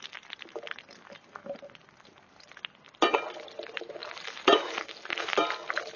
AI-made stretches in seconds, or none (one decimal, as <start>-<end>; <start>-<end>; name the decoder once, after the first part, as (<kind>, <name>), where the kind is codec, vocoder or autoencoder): none